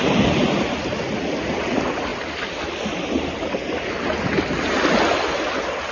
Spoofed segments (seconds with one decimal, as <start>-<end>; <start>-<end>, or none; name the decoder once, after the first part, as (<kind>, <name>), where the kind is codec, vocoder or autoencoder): none